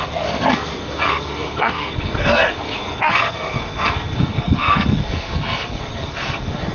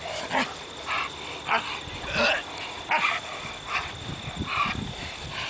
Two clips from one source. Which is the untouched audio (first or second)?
second